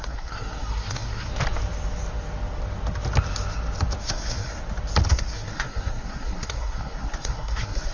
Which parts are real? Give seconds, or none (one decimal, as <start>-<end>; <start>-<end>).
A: 1.3-4.0; 4.6-5.1